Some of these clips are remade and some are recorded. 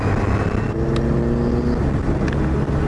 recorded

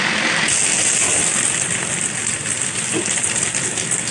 recorded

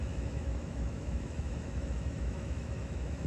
remade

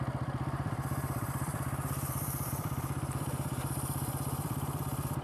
remade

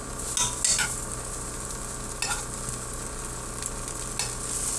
recorded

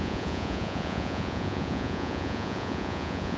remade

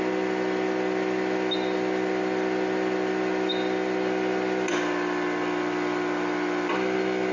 recorded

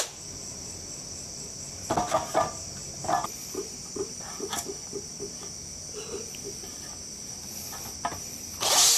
recorded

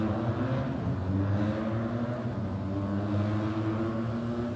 recorded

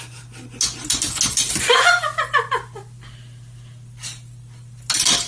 recorded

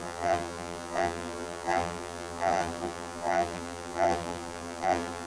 remade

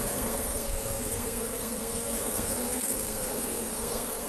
remade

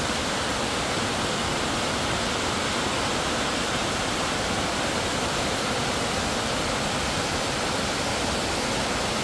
recorded